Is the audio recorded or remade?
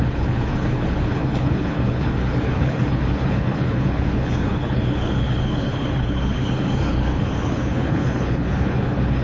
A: remade